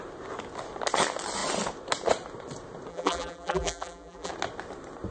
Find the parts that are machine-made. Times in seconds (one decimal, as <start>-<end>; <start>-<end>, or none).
2.9-4.3